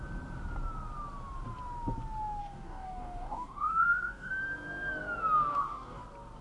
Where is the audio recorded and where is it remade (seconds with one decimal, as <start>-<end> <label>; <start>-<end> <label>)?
0.0-2.4 recorded; 2.4-4.3 remade; 4.3-5.5 recorded; 5.5-6.0 remade; 6.0-6.4 recorded